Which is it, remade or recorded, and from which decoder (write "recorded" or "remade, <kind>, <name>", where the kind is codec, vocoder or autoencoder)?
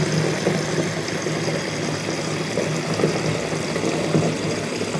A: recorded